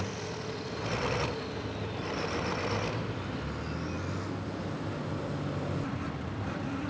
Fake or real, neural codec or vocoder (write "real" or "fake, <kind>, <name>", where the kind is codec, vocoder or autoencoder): real